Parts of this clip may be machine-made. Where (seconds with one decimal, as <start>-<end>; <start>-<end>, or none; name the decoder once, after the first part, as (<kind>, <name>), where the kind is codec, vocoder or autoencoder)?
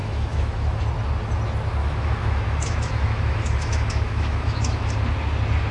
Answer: 0.0-0.8 (autoencoder, DAC-VAE); 1.8-4.9